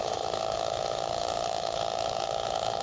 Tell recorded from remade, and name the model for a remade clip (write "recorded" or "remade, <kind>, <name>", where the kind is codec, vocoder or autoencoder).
remade, autoencoder, DAC-VAE